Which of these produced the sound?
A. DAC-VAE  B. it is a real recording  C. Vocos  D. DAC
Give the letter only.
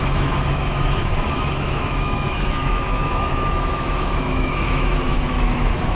A